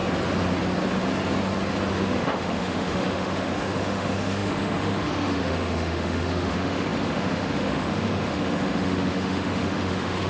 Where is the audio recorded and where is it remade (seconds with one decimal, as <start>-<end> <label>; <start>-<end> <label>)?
0.0-1.9 recorded; 1.9-10.3 remade